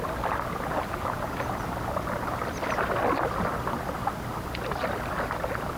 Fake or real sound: real